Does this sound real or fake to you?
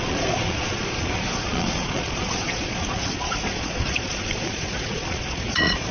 fake